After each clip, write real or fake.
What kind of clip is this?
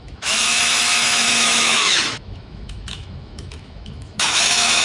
fake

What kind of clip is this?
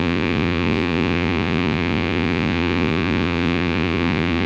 fake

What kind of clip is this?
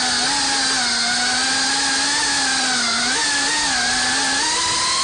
real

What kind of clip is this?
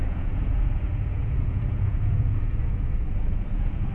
fake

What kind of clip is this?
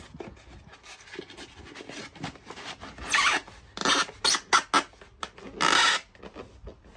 real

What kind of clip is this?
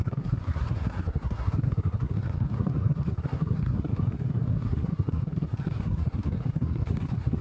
fake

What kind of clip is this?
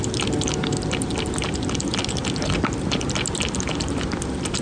real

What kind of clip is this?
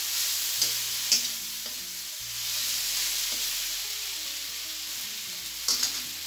real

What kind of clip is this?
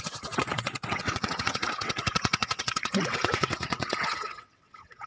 fake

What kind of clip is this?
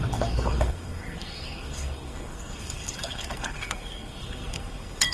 fake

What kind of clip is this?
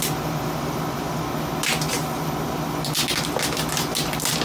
real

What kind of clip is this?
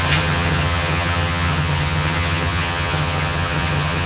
fake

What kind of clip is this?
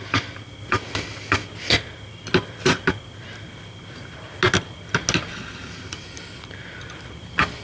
real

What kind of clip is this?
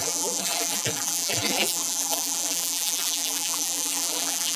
fake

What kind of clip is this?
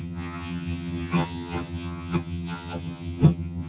fake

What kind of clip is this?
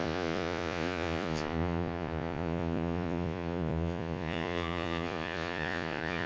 fake